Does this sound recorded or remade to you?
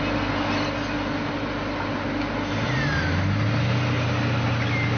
recorded